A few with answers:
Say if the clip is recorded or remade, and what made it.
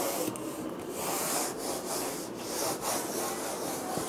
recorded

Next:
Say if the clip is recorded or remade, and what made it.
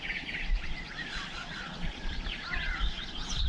remade, vocoder, Vocos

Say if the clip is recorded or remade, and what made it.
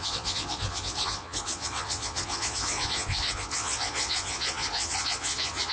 remade, vocoder, Vocos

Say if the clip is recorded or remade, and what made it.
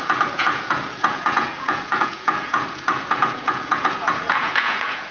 remade, vocoder, Vocos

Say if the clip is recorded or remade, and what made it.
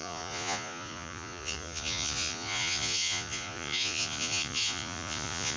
remade, vocoder, Vocos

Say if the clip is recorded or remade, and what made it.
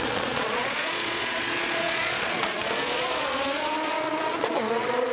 remade, vocoder, Vocos